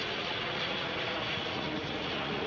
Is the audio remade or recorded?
remade